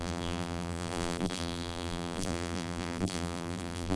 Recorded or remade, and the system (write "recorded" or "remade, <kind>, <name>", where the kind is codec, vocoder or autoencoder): remade, vocoder, BigVGAN v2